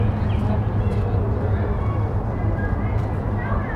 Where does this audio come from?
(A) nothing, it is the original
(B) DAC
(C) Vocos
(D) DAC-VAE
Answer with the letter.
A